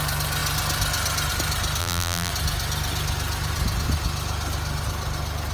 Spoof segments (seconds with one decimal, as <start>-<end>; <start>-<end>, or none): 1.8-2.3